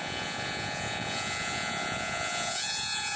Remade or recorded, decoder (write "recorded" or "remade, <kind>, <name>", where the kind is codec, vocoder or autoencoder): remade, vocoder, Vocos